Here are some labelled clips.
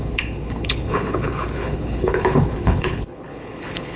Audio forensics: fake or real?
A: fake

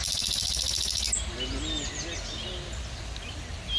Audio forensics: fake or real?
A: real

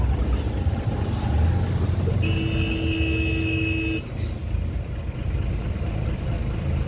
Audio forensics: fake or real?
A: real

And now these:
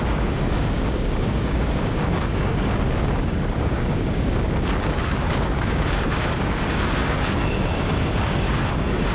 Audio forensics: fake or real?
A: fake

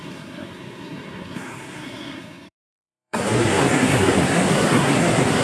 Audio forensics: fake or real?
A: fake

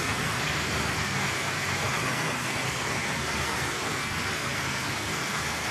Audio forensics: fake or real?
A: fake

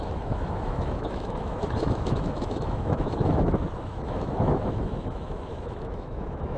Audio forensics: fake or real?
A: fake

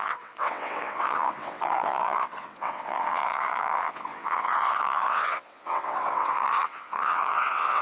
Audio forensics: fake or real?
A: fake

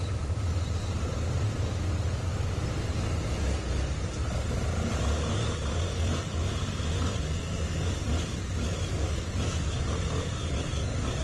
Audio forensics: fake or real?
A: real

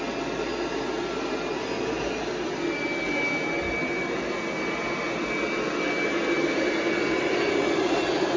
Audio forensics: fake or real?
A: real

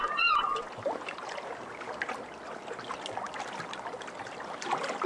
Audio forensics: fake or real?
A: real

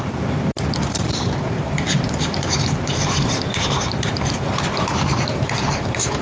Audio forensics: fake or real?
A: fake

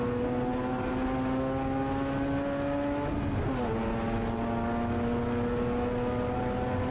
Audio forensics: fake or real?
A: real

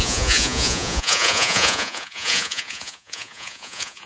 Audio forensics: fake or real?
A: fake